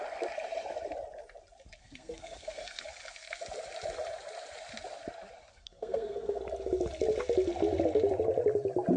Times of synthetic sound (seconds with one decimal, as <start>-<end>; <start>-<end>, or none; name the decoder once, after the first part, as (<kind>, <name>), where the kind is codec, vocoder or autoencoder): 1.8-2.8 (codec, SNAC); 5.5-6.4